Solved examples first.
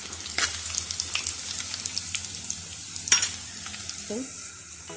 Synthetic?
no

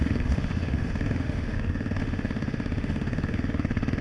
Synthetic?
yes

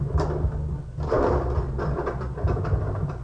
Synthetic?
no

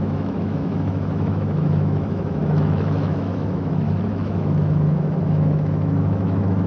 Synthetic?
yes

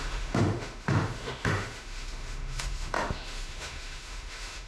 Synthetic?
yes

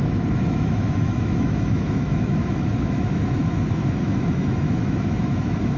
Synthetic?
yes